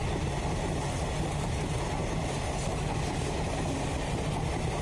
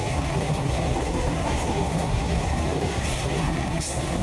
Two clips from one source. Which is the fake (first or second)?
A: second